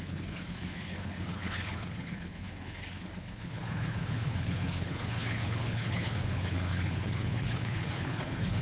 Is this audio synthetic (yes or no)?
yes